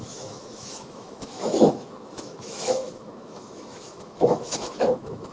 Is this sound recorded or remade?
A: remade